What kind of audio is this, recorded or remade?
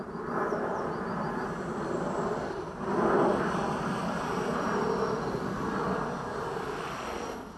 recorded